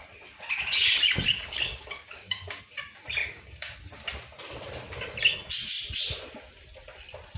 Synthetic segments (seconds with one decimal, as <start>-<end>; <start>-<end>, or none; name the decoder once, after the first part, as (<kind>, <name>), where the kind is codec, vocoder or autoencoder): 1.3-2.6 (codec, DAC); 3.2-3.8